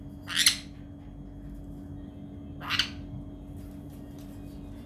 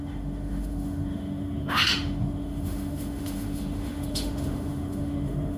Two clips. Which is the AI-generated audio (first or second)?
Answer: second